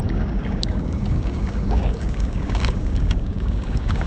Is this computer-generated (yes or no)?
yes